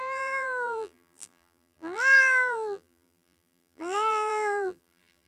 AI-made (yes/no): yes